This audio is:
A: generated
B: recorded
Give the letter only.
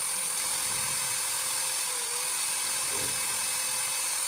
B